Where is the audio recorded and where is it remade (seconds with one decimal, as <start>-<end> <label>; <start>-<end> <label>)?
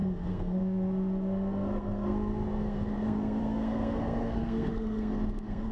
0.0-5.7 remade